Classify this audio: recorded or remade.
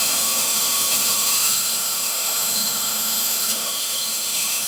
remade